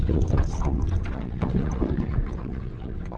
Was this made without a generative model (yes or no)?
no